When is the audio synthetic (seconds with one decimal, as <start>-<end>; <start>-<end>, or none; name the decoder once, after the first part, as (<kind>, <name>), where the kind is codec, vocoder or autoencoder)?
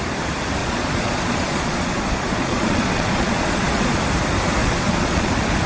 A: 0.6-4.0 (vocoder, Vocos); 4.6-5.3